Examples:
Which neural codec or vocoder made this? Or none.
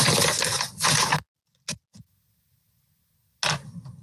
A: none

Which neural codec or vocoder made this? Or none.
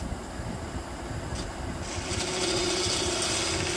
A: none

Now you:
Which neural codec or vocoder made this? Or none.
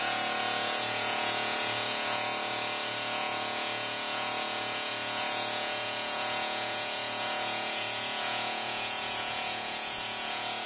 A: vocoder, Vocos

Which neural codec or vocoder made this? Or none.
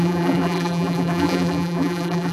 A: vocoder, BigVGAN v2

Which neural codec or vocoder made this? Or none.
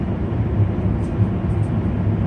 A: none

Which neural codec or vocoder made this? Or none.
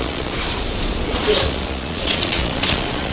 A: vocoder, Vocos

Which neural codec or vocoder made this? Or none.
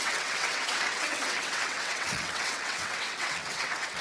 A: vocoder, WaveNeXt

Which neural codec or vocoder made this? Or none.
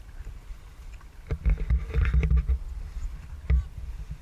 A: vocoder, BigVGAN v2